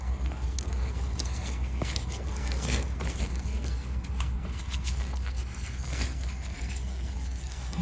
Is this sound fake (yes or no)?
yes